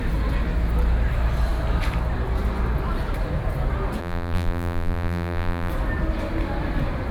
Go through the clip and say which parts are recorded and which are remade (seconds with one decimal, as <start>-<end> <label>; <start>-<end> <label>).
0.0-4.0 recorded; 4.0-5.7 remade; 5.7-7.1 recorded